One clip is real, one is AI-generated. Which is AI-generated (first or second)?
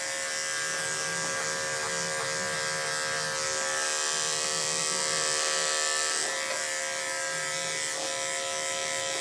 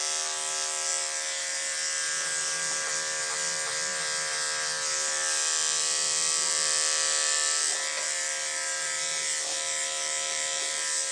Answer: second